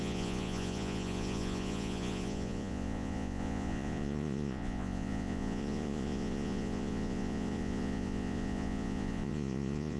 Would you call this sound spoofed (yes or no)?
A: yes